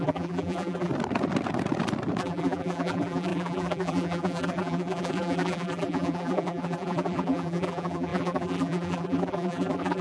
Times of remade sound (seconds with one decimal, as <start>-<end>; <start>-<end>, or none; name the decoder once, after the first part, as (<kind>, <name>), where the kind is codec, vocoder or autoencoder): 0.0-0.9 (vocoder, BigVGAN v2); 2.2-10.0